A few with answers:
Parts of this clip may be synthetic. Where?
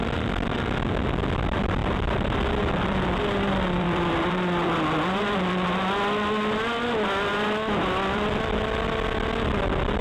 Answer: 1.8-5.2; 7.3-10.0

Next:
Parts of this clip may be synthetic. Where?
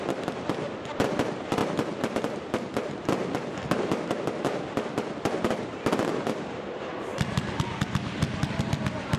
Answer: 0.0-1.6; 5.5-7.1; 8.6-9.2